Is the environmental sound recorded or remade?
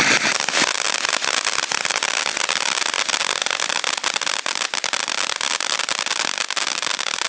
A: recorded